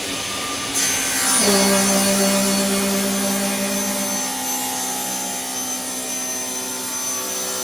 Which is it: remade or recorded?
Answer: recorded